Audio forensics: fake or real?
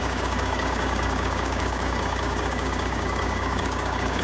fake